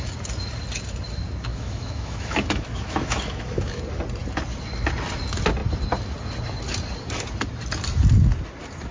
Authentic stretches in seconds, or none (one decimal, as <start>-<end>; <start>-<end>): 0.0-1.5; 3.8-8.9